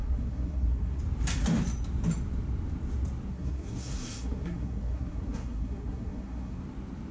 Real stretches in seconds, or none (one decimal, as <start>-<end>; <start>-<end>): 1.0-3.3; 6.6-7.1